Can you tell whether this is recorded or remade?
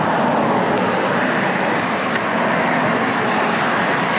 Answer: recorded